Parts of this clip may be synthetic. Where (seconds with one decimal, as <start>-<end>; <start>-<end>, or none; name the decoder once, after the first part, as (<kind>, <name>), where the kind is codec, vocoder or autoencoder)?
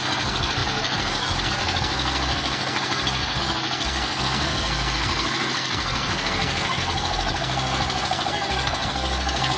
0.0-9.6 (codec, SNAC)